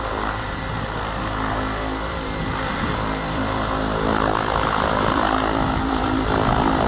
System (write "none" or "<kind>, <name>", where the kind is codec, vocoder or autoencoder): vocoder, BigVGAN v2